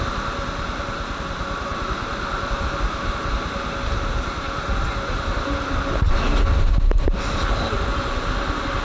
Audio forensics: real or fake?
real